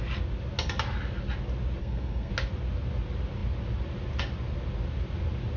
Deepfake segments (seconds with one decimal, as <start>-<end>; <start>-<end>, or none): 1.8-2.3

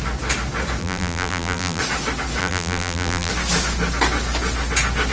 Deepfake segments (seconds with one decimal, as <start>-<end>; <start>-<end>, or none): 0.8-1.8; 2.4-3.3

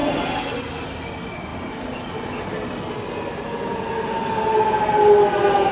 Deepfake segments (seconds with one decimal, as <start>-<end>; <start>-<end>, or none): none

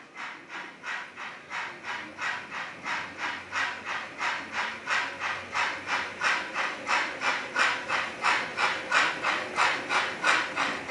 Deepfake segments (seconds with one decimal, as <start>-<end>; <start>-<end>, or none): none